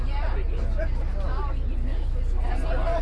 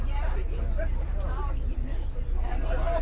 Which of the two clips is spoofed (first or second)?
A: second